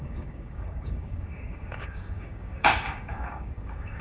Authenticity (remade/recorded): remade